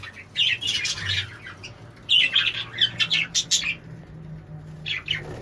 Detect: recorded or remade recorded